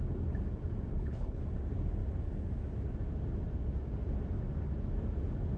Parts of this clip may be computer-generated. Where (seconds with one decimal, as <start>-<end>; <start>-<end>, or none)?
0.9-1.4